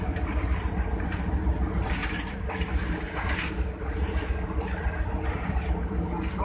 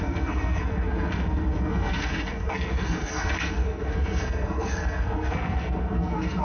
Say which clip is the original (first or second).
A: first